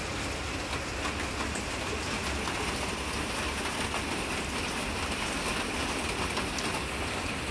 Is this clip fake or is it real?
real